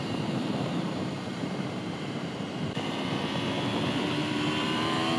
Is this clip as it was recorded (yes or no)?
no